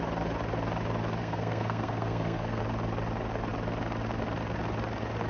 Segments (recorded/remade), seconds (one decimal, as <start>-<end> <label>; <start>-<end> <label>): 0.0-1.2 recorded; 1.2-2.6 remade; 2.6-5.3 recorded